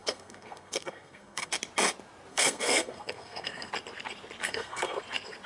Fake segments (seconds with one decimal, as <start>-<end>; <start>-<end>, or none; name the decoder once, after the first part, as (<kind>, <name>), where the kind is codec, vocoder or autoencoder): 0.0-1.5 (codec, SNAC); 2.3-3.7; 4.4-5.0

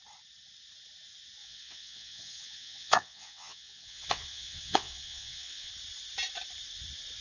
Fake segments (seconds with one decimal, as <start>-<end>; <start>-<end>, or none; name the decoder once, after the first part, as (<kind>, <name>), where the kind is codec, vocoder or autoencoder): 1.4-5.7 (vocoder, WaveNeXt)

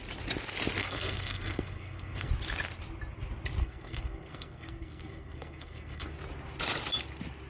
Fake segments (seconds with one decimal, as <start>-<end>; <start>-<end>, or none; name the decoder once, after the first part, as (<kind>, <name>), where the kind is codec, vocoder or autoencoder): 0.8-2.3 (codec, SNAC); 3.6-6.2

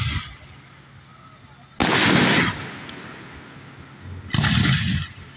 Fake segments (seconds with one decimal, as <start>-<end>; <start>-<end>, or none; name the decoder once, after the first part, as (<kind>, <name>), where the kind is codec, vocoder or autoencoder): none

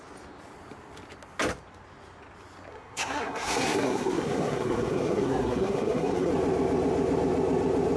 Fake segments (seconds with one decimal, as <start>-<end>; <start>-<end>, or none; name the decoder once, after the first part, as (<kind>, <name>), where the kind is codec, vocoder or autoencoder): 2.7-6.3 (codec, SNAC)